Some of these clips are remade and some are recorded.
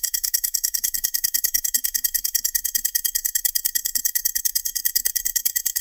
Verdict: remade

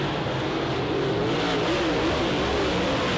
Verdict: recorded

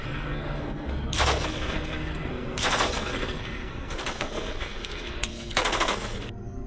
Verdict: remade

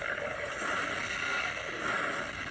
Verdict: recorded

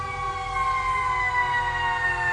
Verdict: recorded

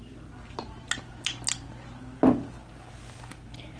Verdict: recorded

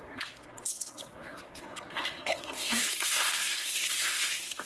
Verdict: remade